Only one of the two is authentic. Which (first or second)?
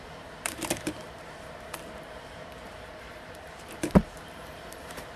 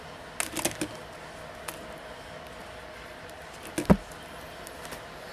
second